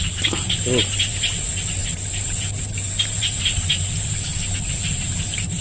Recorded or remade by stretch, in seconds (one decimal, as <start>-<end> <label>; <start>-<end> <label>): 0.0-5.6 remade